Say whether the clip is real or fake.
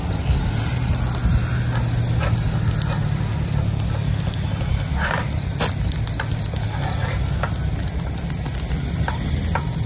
real